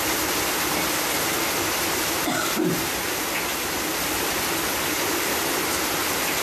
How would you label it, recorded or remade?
recorded